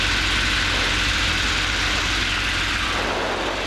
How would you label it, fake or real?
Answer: real